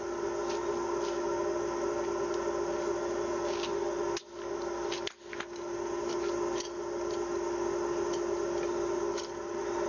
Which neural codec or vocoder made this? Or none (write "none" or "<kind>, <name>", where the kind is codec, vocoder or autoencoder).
none